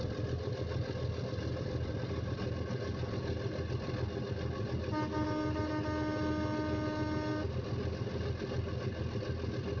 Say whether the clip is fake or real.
real